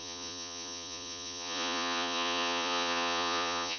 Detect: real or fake fake